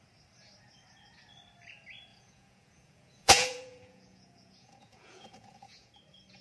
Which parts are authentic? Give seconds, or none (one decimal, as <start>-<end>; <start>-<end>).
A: 0.0-2.1; 5.9-6.4

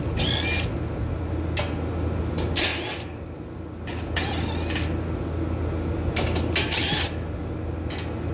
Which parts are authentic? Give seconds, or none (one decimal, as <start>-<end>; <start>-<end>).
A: 0.0-8.3

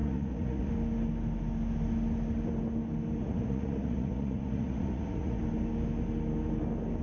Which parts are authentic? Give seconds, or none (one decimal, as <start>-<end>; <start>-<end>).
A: 0.7-3.2; 5.4-7.0

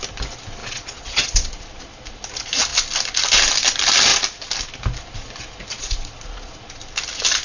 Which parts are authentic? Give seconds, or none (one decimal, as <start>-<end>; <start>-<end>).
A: 0.0-0.6; 1.8-5.7; 6.8-7.4

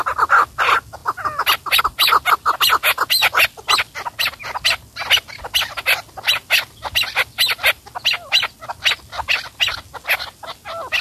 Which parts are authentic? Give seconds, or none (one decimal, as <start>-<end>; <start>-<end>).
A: 0.0-11.0

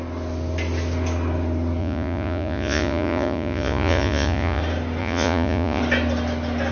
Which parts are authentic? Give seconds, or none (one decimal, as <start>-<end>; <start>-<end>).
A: 0.0-1.8; 4.6-5.0; 5.8-6.7

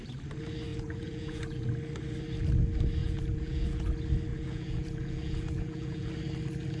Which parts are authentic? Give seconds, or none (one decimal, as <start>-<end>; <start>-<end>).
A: 0.0-0.7; 1.7-3.0; 3.9-4.3; 6.1-6.8